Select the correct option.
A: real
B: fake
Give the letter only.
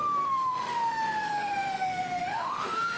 B